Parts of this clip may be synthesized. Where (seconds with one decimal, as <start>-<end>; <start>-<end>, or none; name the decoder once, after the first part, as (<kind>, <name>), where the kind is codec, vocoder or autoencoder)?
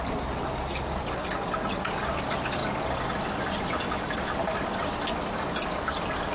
none